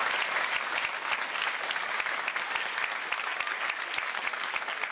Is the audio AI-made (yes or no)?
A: no